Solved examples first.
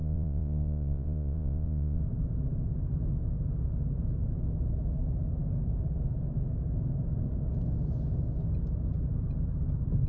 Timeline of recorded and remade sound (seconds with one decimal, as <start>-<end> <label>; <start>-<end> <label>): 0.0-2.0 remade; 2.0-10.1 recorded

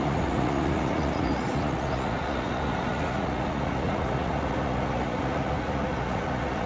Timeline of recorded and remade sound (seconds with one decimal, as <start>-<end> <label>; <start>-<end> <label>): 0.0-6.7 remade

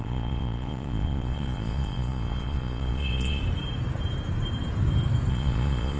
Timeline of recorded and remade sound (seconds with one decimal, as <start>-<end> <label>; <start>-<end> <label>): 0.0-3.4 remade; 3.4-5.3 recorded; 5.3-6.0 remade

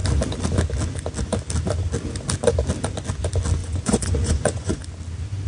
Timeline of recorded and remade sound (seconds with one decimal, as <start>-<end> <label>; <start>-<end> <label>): 0.0-3.6 recorded; 3.6-4.8 remade; 4.8-5.5 recorded